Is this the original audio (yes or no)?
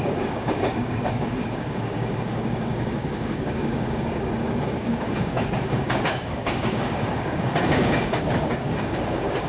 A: no